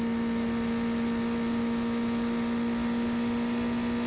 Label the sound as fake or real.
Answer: real